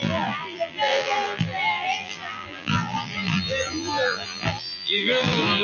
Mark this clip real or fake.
fake